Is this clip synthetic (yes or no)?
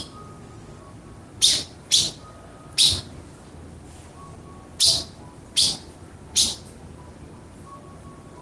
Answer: no